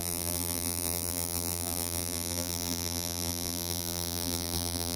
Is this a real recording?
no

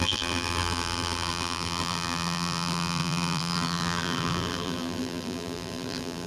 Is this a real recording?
no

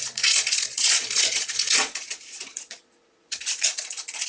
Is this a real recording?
no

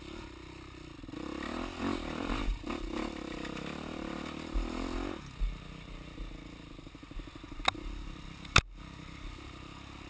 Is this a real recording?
yes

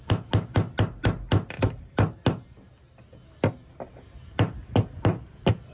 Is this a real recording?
yes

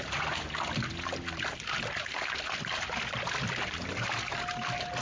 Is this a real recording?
yes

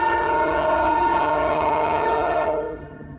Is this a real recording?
no